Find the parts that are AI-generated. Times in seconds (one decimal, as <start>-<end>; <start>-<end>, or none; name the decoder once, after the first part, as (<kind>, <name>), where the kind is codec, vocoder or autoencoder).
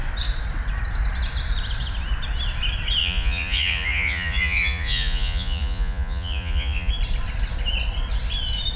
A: 3.0-6.9 (vocoder, Vocos)